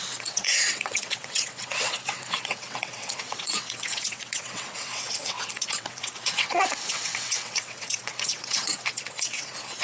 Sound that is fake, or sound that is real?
fake